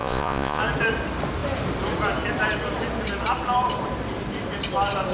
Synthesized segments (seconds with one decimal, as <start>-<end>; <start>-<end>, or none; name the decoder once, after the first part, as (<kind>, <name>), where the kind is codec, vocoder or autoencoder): 0.0-0.6 (vocoder, Vocos)